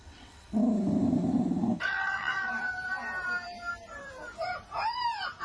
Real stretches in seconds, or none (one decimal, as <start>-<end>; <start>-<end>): 0.6-1.8; 2.5-5.4

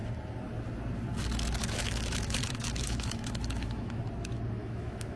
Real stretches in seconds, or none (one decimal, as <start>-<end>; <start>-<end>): 0.0-1.6; 4.0-4.6